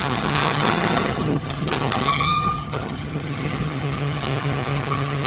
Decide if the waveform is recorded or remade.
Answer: remade